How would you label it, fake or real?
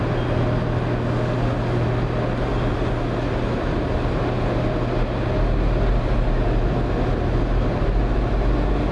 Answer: real